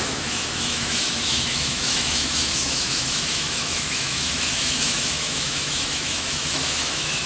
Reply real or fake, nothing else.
fake